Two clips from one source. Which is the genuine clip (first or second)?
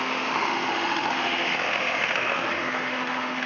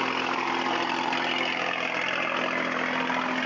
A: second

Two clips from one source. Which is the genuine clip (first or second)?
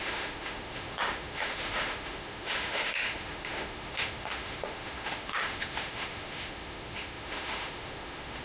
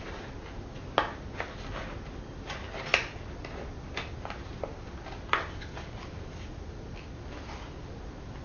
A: second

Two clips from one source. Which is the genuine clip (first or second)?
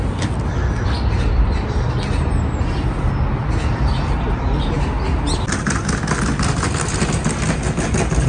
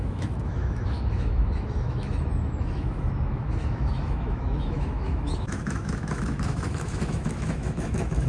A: first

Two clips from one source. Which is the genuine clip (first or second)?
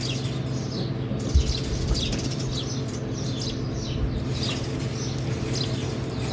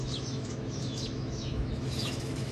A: first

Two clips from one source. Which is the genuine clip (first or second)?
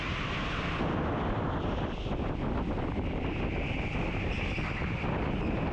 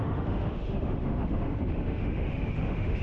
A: first